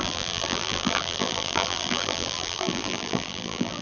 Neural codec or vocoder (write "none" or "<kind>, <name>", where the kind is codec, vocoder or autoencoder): vocoder, BigVGAN v2